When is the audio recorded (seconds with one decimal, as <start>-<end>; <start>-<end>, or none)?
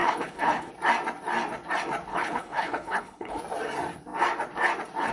0.7-2.1; 3.4-5.1